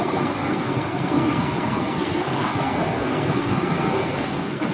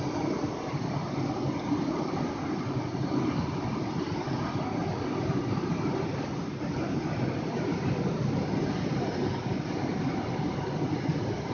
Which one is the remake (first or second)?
first